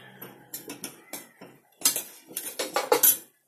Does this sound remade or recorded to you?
recorded